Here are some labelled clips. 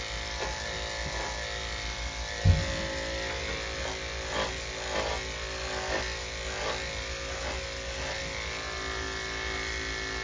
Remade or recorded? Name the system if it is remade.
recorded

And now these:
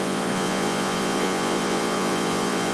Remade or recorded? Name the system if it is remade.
remade, vocoder, Vocos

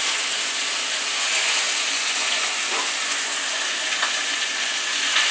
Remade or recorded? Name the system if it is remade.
remade, vocoder, Vocos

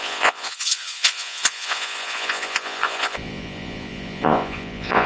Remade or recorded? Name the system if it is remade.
remade, vocoder, Vocos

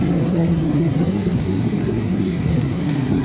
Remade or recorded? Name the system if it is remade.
remade, codec, SNAC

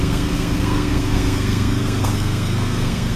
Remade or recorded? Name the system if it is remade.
remade, codec, SNAC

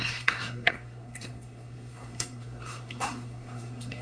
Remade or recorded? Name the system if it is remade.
remade, codec, SNAC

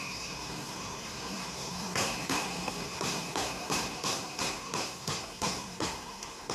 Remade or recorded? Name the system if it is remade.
remade, codec, SNAC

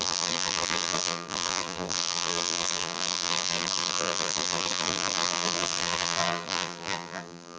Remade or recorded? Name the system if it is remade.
remade, vocoder, BigVGAN v2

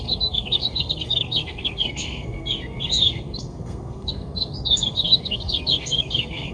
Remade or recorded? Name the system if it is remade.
remade, codec, SNAC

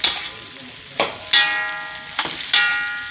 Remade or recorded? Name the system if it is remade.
recorded